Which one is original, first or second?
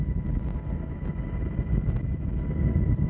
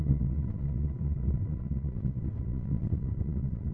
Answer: first